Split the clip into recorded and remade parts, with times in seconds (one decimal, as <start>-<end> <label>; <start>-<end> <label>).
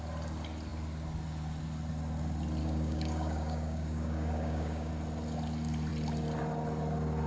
0.0-2.6 recorded; 2.6-4.9 remade; 4.9-7.3 recorded